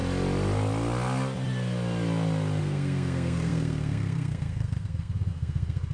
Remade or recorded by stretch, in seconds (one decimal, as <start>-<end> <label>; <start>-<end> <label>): 0.0-2.6 recorded; 2.6-5.9 remade